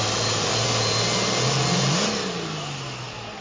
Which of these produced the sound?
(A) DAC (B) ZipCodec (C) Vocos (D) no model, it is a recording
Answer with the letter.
D